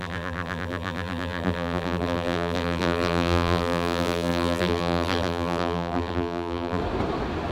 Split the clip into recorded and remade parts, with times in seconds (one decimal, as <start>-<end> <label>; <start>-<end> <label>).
0.0-6.8 remade; 6.8-7.5 recorded